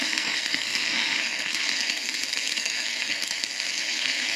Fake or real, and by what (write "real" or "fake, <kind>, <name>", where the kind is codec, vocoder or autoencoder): fake, codec, SNAC